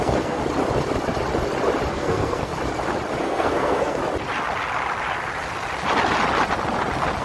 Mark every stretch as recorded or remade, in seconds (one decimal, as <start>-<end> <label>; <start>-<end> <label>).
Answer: 0.0-0.4 remade; 0.4-1.9 recorded; 1.9-2.5 remade; 2.5-3.2 recorded; 3.2-4.0 remade; 4.0-7.2 recorded